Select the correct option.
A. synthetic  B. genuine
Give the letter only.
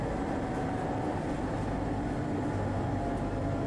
B